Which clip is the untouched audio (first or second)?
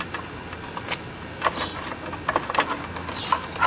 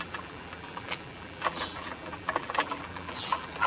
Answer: first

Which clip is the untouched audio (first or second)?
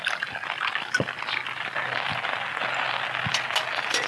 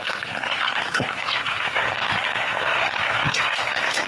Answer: first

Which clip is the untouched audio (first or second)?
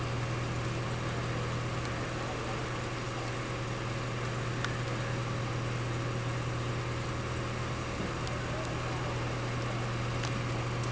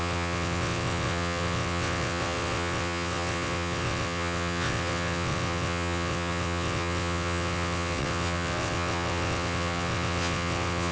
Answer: first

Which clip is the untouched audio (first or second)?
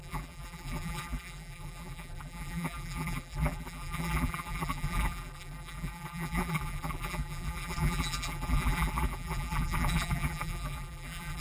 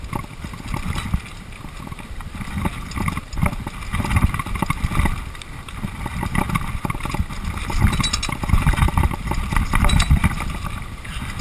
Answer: second